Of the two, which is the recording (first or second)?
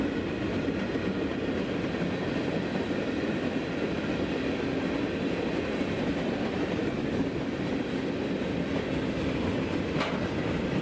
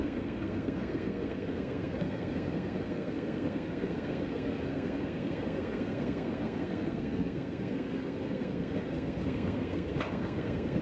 first